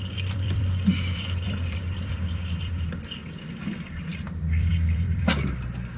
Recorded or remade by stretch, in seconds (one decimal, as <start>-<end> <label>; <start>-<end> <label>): 0.0-6.0 remade